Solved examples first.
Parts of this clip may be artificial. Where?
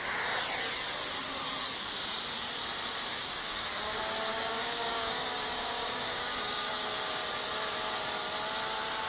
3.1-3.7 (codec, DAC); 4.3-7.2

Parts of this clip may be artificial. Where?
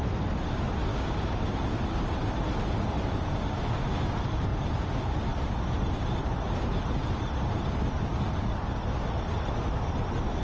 0.9-1.5 (codec, DAC)